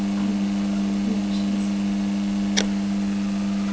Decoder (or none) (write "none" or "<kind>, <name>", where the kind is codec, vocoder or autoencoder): none